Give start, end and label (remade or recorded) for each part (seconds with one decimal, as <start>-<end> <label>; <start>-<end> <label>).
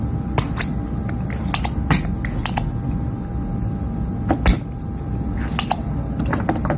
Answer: 0.0-6.8 recorded